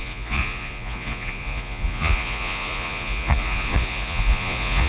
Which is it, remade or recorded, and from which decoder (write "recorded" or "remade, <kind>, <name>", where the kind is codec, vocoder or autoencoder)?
remade, vocoder, Vocos